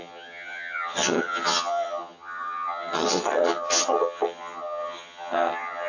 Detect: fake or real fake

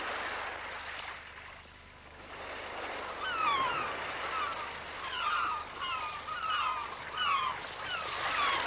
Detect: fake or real real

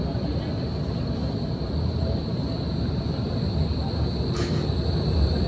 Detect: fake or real real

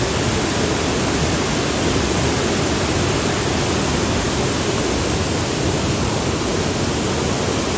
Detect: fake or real real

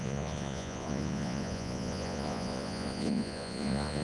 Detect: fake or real fake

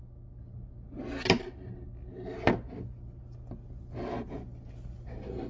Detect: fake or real real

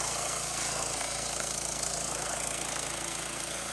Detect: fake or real fake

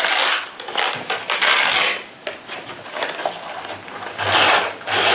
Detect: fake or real real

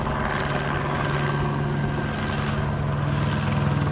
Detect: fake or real real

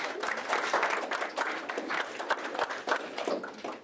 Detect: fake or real real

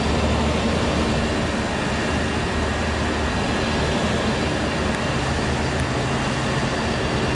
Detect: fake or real real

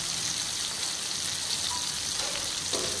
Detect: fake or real real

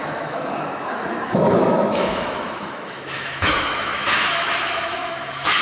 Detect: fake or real fake